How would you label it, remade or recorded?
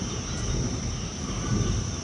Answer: remade